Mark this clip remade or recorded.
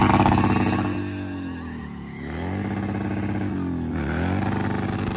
recorded